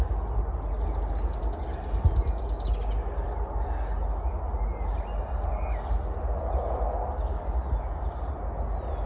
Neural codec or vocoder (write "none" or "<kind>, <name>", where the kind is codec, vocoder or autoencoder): none